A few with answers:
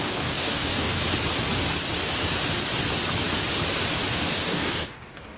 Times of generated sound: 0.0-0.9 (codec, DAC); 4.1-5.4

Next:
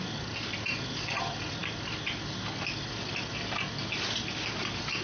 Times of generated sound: none